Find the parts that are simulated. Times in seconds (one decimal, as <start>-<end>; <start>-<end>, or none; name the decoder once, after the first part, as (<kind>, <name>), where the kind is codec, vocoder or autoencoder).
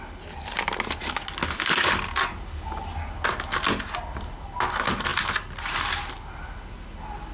none